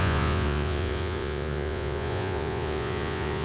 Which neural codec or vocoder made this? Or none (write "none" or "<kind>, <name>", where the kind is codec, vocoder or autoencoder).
vocoder, Vocos